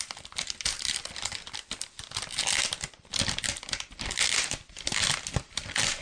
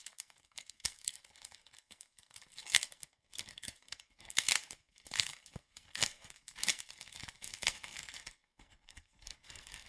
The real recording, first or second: first